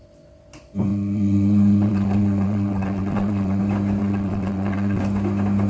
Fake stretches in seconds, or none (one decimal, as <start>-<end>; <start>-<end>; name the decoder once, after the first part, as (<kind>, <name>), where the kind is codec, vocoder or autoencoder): 0.9-3.6 (vocoder, WaveNeXt); 4.0-5.0